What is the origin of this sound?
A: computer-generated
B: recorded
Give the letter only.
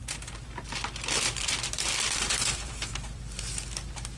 A